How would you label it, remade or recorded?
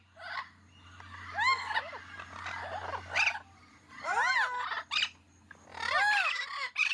recorded